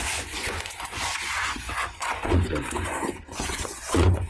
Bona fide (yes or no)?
no